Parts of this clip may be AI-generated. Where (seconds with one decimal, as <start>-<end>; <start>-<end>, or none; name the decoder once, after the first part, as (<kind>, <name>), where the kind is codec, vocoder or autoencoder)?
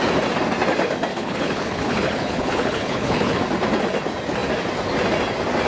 1.1-3.4 (codec, HILCodec)